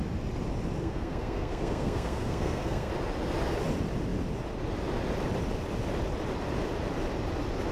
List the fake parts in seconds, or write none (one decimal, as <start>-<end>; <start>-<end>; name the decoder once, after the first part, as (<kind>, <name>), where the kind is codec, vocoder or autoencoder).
0.8-2.9 (codec, SNAC)